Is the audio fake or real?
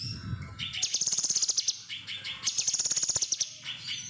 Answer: real